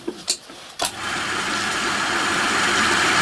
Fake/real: fake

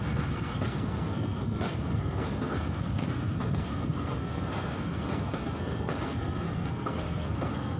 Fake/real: fake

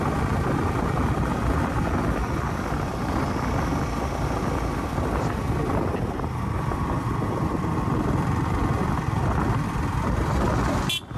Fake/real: real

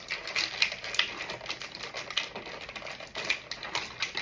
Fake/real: real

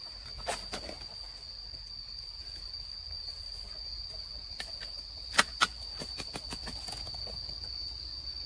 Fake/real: real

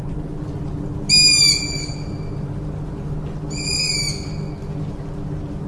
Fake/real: real